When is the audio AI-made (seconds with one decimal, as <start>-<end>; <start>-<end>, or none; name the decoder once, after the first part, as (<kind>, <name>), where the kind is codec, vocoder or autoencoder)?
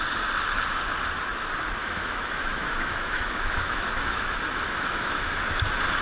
1.8-5.4 (autoencoder, DAC-VAE)